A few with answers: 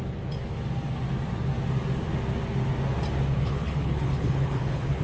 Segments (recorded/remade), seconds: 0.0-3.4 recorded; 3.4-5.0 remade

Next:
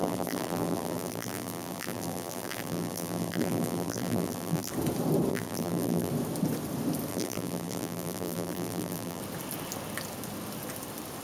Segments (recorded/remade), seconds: 0.0-4.7 remade; 4.7-5.3 recorded; 5.3-6.1 remade; 6.1-7.1 recorded; 7.1-9.2 remade; 9.2-11.2 recorded

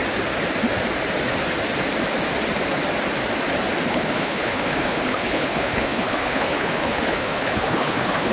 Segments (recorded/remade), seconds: 0.0-3.9 recorded; 3.9-8.3 remade

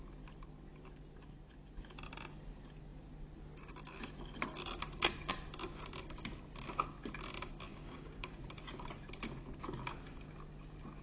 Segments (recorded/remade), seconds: 0.0-7.7 recorded; 7.7-8.3 remade; 8.3-11.0 recorded